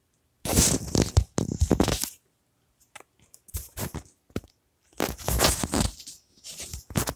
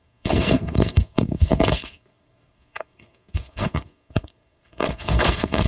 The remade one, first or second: second